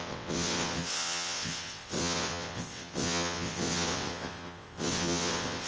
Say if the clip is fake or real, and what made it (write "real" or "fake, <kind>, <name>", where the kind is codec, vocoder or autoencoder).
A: fake, vocoder, WaveNeXt